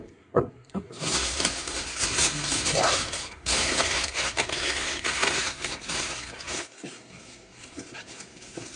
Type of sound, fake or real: fake